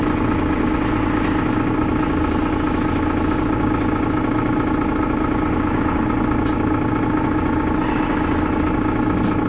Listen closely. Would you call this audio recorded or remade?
recorded